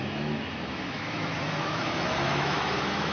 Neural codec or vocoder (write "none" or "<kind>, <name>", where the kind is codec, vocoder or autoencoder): autoencoder, DAC-VAE